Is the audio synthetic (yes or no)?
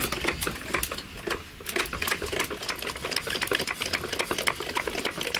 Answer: no